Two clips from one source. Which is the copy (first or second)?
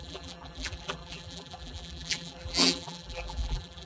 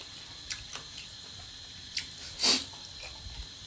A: first